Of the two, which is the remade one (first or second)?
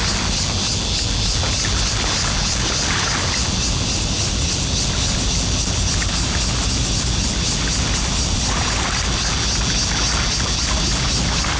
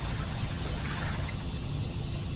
second